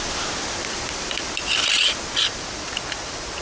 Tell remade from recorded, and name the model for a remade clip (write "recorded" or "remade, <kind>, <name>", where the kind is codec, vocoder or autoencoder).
recorded